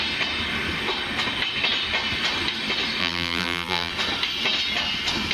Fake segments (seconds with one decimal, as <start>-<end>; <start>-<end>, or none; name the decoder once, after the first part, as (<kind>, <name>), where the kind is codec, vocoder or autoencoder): 3.0-3.9 (vocoder, BigVGAN v2)